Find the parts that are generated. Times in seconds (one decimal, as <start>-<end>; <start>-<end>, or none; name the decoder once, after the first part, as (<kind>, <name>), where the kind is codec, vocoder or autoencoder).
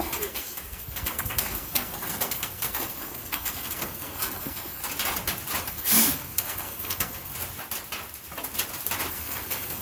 0.0-4.8 (codec, SNAC); 5.7-7.3; 9.1-9.8